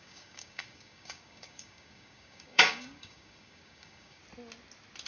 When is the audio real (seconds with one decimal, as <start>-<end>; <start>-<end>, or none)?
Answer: 4.2-5.1